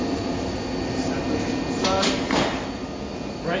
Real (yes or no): yes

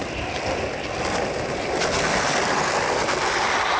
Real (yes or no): yes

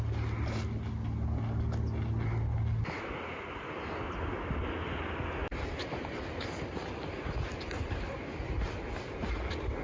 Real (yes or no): yes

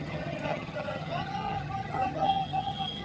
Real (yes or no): no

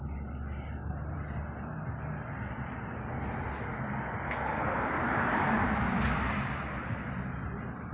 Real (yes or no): yes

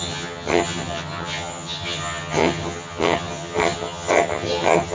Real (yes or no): no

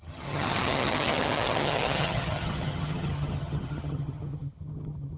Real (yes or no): no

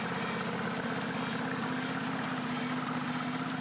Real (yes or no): yes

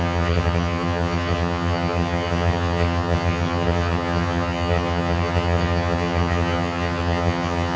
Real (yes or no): no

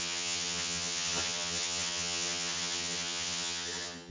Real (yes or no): no